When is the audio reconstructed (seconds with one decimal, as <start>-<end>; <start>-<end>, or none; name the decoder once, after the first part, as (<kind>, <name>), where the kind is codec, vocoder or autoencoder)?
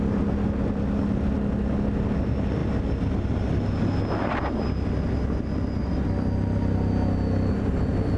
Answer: none